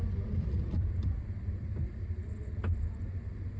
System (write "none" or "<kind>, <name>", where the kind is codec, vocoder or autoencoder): vocoder, BigVGAN v2